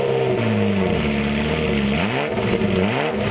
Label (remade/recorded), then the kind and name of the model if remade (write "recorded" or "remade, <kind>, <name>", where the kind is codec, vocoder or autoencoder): recorded